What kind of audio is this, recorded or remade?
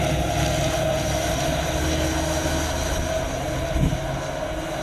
recorded